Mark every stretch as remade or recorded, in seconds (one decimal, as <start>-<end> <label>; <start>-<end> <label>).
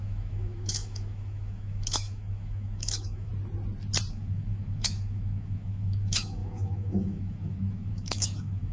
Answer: 0.0-3.3 remade; 3.3-4.1 recorded; 4.1-8.7 remade